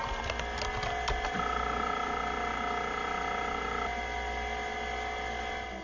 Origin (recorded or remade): recorded